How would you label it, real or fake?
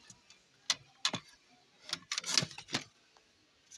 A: real